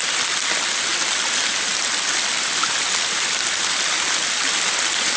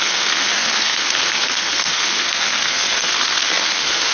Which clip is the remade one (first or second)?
second